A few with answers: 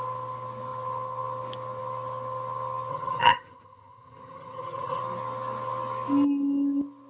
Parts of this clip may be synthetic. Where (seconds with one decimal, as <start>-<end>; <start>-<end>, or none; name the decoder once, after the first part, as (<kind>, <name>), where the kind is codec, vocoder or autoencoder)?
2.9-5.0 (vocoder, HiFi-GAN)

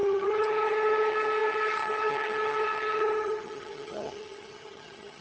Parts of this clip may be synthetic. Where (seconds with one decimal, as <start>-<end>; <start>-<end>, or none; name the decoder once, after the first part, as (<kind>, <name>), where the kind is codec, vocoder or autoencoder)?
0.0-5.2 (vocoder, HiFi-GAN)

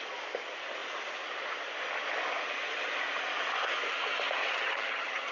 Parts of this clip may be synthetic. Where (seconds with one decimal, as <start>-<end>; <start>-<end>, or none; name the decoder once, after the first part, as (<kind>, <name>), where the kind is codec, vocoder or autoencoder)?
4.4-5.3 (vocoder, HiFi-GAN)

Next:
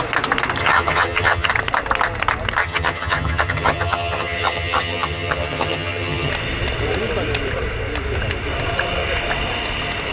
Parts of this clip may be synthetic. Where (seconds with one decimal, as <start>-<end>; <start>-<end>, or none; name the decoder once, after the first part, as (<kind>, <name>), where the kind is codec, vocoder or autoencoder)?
0.6-1.5 (vocoder, HiFi-GAN); 2.6-6.3